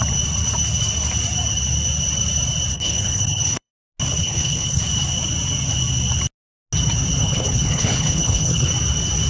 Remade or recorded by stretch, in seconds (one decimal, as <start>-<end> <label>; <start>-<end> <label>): 0.0-2.7 recorded; 2.7-3.7 remade; 3.7-4.2 recorded; 4.2-4.8 remade; 4.8-7.2 recorded; 7.2-8.7 remade; 8.7-9.3 recorded

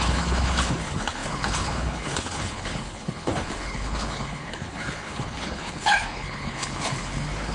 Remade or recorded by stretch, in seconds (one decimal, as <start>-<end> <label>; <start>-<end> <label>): 0.0-7.5 remade

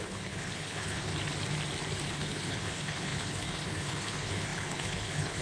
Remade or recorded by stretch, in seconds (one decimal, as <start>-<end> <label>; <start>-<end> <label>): 0.0-1.1 remade; 1.1-2.1 recorded; 2.1-5.4 remade

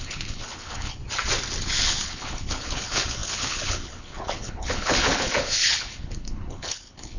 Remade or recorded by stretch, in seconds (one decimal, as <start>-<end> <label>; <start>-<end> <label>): 0.0-1.0 remade; 1.0-1.6 recorded; 1.6-7.2 remade